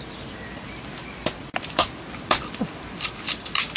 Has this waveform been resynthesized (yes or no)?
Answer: no